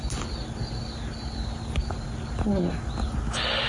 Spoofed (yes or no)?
no